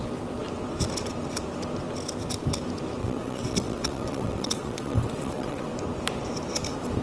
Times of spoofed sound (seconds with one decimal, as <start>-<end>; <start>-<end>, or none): 3.0-5.7